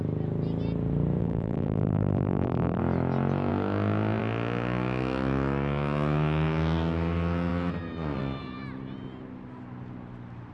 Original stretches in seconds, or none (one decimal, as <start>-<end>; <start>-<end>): 0.0-1.2; 2.8-10.5